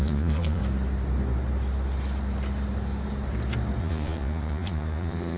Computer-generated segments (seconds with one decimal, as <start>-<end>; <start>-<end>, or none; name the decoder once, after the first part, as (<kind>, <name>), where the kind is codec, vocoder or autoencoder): 0.0-0.6 (vocoder, Vocos); 3.8-5.4

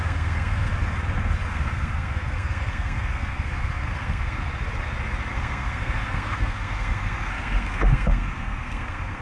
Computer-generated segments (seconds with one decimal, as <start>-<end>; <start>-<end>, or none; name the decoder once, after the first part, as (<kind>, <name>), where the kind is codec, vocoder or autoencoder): 0.0-0.7 (codec, SNAC); 1.5-4.5; 5.3-9.2

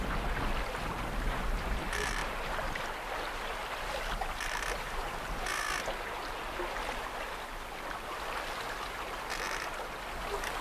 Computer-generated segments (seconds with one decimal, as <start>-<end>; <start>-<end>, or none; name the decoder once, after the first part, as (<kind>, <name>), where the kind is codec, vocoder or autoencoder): none

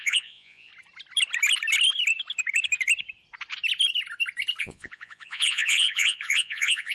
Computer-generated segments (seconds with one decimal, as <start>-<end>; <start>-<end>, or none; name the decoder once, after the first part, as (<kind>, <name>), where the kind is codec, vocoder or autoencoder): 0.0-0.7 (vocoder, Vocos); 4.6-6.9